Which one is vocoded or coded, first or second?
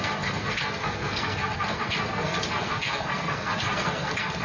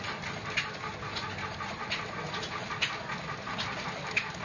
first